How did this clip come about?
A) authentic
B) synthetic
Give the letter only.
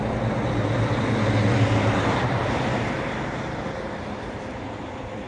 A